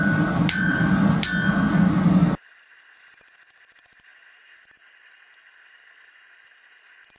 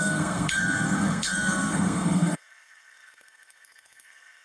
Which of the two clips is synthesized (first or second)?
second